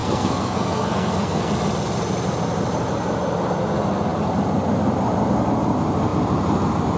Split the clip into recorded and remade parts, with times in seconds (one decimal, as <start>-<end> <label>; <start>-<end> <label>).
0.0-1.5 remade; 1.5-7.0 recorded